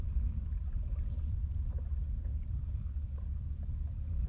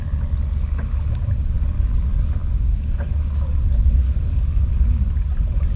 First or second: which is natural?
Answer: second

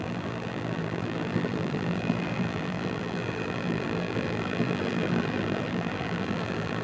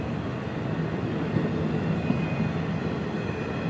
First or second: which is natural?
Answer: second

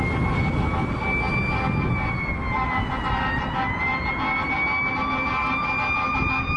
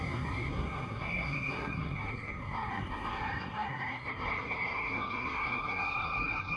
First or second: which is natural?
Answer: first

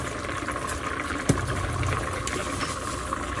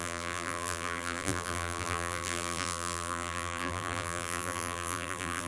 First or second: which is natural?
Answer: first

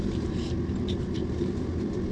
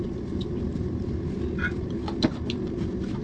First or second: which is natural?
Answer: first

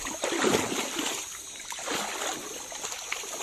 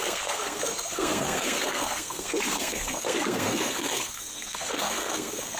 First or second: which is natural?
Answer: first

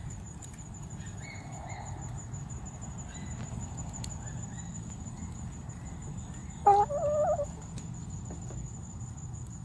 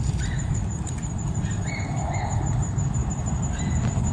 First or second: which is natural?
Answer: first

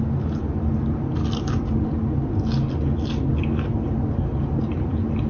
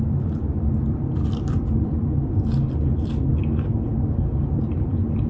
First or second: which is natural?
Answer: first